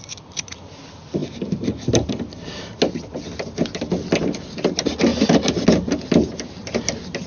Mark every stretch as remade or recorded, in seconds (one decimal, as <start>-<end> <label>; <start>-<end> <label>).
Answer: 0.0-7.3 recorded